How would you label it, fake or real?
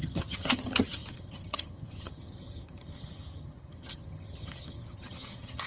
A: fake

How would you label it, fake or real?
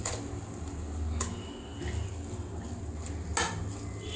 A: real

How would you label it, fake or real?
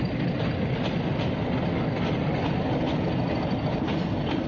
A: real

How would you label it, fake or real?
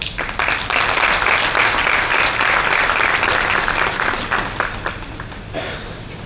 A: real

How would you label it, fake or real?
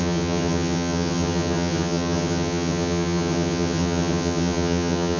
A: fake